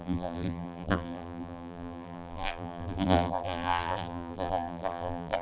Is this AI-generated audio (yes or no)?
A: yes